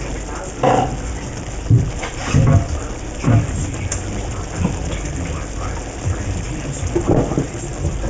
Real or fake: real